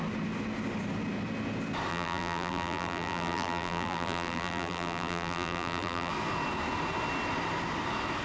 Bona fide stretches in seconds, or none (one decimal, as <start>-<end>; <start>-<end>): 0.0-1.9; 6.1-8.2